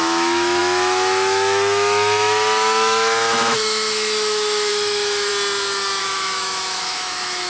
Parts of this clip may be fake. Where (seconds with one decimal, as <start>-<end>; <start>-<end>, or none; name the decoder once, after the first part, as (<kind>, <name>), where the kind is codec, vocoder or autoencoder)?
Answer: 0.0-5.3 (autoencoder, DAC-VAE); 6.0-7.5